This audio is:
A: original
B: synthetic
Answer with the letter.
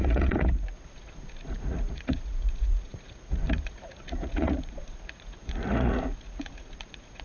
B